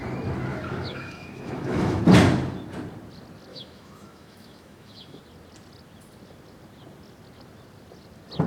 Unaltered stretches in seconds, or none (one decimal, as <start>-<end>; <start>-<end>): 0.0-0.5; 2.0-3.5; 5.2-8.5